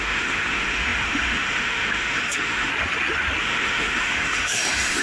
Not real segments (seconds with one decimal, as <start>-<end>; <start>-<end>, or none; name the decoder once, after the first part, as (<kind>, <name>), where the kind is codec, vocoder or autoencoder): 0.0-2.7 (autoencoder, DAC-VAE); 3.4-5.0